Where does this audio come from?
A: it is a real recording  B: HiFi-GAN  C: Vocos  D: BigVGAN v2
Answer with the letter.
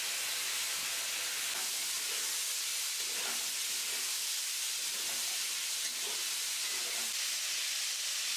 A